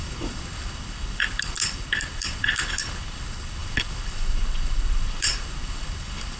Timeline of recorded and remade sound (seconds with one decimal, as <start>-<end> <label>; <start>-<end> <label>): 0.0-6.4 remade